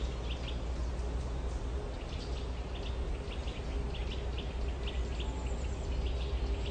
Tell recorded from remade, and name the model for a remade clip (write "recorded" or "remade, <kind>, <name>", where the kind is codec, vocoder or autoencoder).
recorded